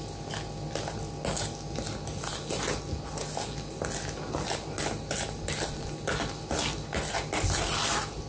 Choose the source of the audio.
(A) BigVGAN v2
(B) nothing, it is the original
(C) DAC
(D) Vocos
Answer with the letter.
B